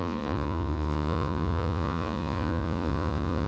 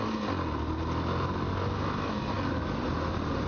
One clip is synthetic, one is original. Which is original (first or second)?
second